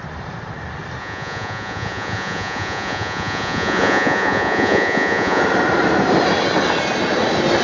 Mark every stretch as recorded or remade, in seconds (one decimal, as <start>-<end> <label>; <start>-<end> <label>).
0.0-1.0 recorded; 1.0-5.4 remade; 5.4-7.6 recorded